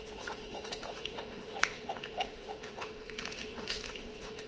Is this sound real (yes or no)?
no